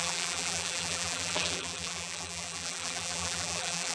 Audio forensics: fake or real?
fake